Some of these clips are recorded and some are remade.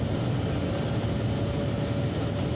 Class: recorded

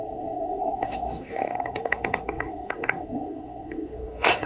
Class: remade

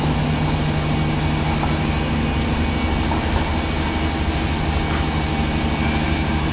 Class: recorded